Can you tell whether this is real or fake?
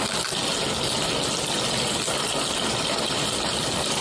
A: real